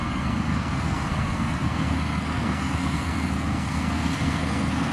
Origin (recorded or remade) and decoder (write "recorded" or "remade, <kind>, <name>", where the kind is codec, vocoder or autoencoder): remade, codec, SNAC